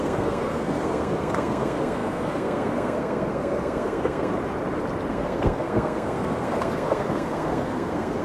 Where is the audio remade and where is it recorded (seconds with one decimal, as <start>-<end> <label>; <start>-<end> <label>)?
0.0-4.3 remade; 4.3-5.1 recorded; 5.1-8.2 remade